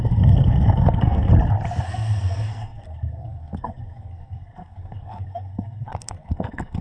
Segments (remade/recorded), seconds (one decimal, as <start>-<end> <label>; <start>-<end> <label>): 0.0-1.3 remade; 1.3-1.8 recorded; 1.8-6.8 remade